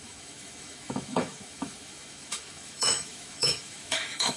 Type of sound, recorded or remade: remade